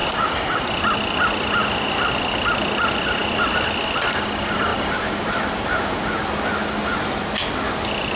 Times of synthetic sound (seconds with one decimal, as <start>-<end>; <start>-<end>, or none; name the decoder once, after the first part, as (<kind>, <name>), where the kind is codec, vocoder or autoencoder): 4.7-6.0 (vocoder, BigVGAN v2)